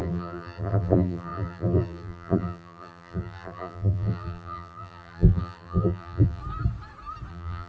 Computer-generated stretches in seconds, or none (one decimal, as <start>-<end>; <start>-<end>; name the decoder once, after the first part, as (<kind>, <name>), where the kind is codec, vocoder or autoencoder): 0.0-6.4 (vocoder, BigVGAN v2); 7.3-7.7